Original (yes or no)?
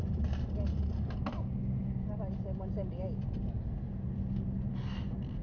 yes